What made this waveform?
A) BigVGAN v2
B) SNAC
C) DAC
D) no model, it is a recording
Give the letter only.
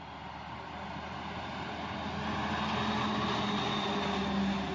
D